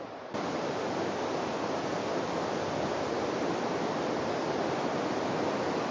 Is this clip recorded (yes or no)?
yes